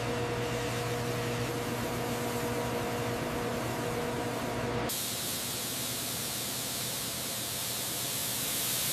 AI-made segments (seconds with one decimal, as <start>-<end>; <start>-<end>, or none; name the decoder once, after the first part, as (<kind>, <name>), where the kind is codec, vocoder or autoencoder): none